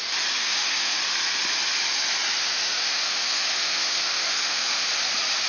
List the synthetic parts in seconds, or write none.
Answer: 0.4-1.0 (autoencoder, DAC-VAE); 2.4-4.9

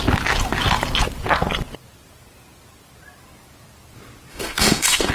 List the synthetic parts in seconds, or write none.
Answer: 4.3-5.1 (autoencoder, DAC-VAE)

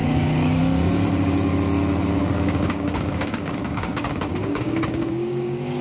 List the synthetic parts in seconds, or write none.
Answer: 0.0-0.6 (codec, DAC); 2.2-5.8

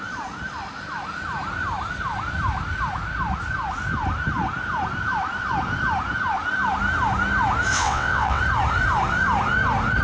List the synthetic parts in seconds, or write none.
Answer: 7.7-8.4 (vocoder, WaveNeXt)

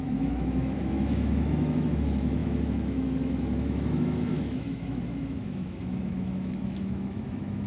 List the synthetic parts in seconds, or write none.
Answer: 0.0-7.7 (autoencoder, DAC-VAE)